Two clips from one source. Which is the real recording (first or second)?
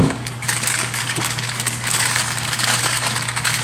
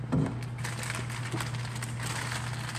second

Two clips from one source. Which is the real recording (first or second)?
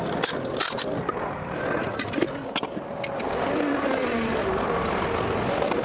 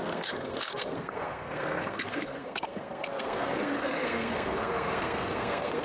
first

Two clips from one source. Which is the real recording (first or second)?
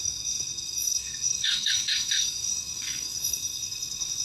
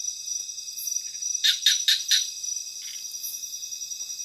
second